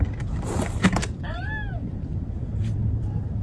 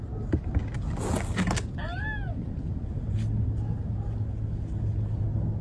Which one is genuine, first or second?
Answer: second